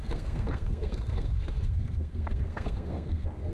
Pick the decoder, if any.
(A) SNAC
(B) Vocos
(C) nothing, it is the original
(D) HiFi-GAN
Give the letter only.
A